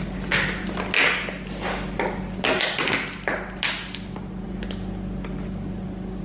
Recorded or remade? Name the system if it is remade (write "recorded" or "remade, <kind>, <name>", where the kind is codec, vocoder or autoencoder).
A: recorded